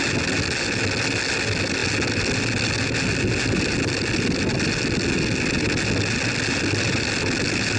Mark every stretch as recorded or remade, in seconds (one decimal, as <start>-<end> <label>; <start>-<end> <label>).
0.0-7.8 recorded